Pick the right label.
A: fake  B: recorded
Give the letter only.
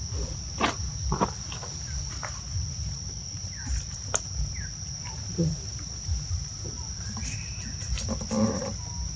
B